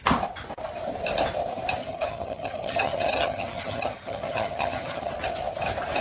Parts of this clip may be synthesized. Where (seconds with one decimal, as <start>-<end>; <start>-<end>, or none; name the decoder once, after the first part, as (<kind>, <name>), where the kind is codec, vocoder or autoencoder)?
1.8-5.1 (vocoder, HiFi-GAN)